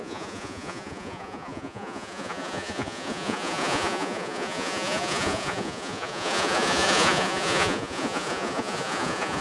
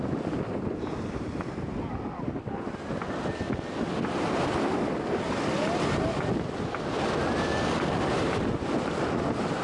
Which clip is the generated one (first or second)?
first